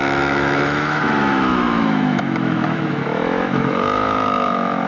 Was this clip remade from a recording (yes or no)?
yes